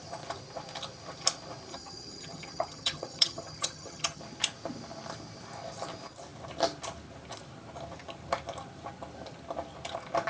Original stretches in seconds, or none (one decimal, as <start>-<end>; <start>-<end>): 0.0-1.7; 4.2-10.3